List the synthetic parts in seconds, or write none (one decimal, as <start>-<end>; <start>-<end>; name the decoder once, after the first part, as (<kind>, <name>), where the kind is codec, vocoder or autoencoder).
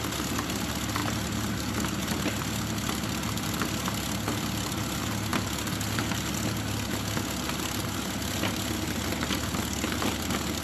none